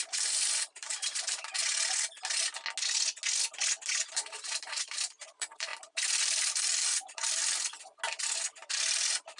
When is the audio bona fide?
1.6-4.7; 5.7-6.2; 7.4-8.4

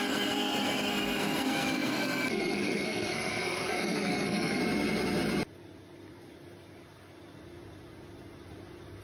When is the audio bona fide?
4.6-9.0